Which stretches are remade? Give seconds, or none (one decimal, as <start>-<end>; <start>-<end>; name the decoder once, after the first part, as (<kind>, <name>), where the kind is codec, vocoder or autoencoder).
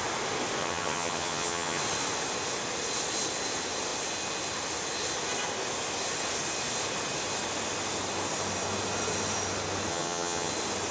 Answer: 0.6-1.8 (vocoder, HiFi-GAN); 9.9-10.5